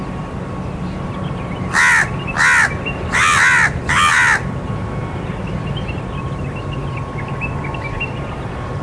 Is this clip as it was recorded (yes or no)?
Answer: yes